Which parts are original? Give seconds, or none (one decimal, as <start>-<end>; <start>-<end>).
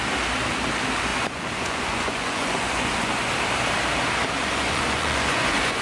0.0-1.1; 3.3-4.4